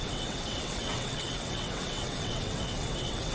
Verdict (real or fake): fake